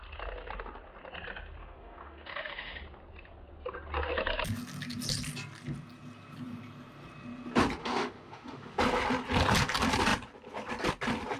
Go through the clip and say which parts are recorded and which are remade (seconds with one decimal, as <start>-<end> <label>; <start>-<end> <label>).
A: 0.0-1.6 recorded; 1.6-2.8 remade; 2.8-7.8 recorded; 7.8-8.8 remade; 8.8-11.4 recorded